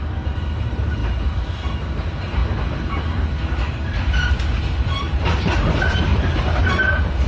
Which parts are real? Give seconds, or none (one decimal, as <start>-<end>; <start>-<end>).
1.0-1.7; 2.4-4.6